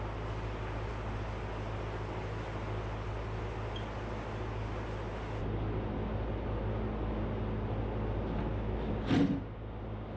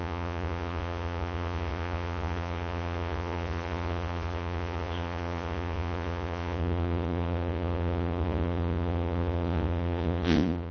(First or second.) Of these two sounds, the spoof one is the second